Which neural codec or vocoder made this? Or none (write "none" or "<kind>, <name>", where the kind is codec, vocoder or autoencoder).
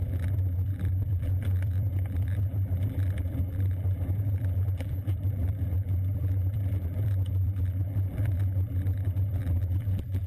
vocoder, BigVGAN v2